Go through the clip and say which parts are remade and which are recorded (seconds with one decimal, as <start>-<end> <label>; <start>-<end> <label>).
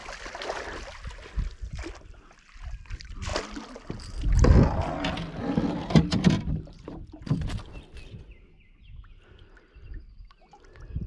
0.0-11.1 recorded